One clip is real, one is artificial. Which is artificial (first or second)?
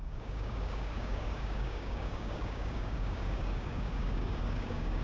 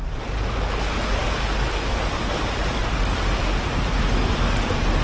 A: first